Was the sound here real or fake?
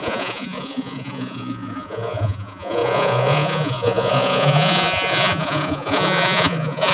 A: fake